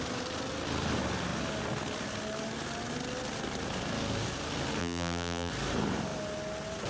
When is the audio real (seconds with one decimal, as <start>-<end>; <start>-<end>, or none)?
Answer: 0.0-4.8; 5.5-6.9